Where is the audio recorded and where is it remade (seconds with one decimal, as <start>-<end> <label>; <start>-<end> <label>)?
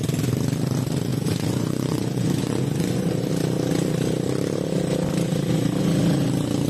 0.0-1.1 recorded; 1.1-3.3 remade; 3.3-6.7 recorded